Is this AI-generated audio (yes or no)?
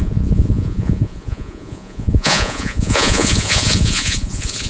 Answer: yes